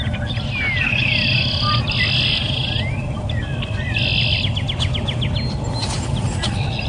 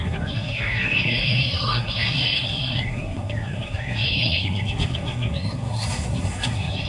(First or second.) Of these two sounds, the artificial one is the second